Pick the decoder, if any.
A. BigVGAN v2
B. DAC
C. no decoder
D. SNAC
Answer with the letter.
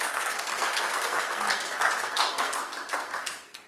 D